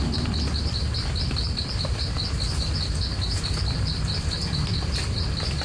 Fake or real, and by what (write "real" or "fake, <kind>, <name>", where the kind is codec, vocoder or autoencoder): real